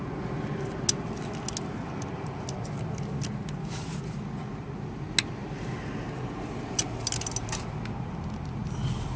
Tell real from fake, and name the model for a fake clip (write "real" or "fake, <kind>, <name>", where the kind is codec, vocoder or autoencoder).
real